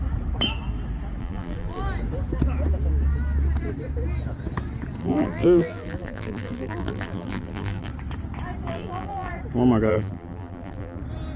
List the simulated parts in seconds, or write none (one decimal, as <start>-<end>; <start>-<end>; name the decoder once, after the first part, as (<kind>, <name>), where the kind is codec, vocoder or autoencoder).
1.2-1.8 (vocoder, BigVGAN v2); 5.0-7.9; 8.7-9.3; 9.9-11.0